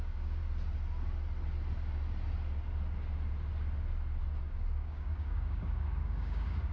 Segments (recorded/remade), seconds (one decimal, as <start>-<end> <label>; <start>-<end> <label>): 0.0-0.4 remade; 0.4-4.4 recorded; 4.4-6.7 remade